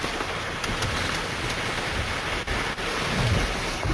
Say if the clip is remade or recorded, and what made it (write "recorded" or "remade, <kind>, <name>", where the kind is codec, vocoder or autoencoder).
recorded